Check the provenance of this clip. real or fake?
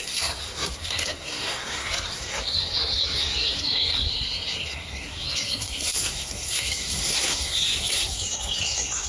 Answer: fake